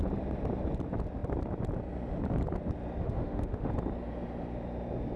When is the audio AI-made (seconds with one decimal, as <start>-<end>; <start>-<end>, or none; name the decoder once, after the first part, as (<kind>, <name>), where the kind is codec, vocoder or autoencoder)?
3.0-3.7 (autoencoder, DAC-VAE)